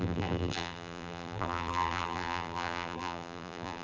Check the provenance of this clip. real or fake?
fake